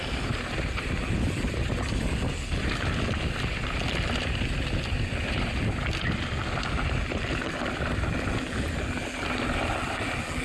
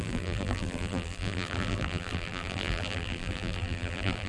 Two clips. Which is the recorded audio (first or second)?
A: first